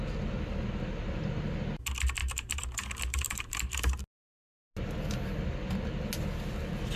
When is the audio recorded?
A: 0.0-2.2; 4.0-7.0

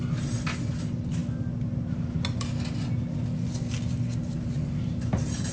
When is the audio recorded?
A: 0.0-5.5

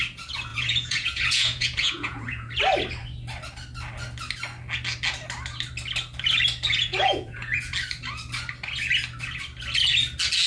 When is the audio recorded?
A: 0.0-0.5; 2.6-6.7; 7.7-10.5

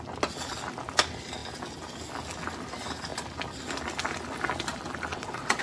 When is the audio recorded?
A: 0.0-5.1

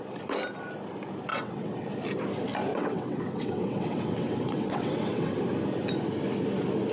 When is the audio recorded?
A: 0.0-1.3; 1.9-2.7; 5.4-6.9

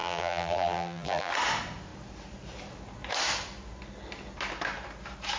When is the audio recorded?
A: 1.3-5.4

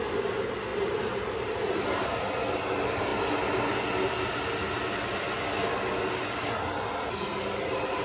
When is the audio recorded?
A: 0.0-0.7; 2.2-8.0